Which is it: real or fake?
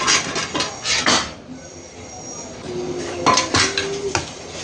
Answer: real